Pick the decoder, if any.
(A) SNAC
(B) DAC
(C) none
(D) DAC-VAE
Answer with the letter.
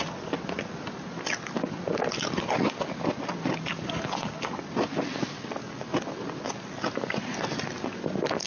C